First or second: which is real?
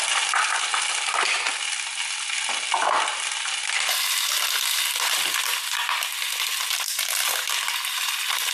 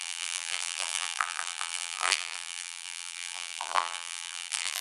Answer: first